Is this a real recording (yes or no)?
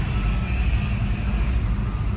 yes